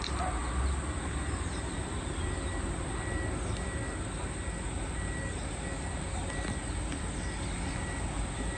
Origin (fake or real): real